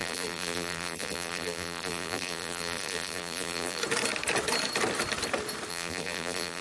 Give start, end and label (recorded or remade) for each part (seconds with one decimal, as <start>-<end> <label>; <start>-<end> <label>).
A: 0.0-3.8 remade; 3.8-5.7 recorded; 5.7-6.6 remade